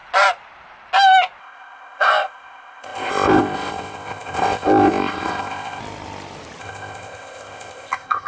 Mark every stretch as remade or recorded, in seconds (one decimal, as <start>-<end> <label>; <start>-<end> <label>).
0.0-1.4 recorded; 1.4-5.8 remade; 5.8-6.6 recorded; 6.6-8.3 remade